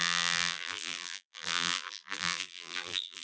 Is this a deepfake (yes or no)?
yes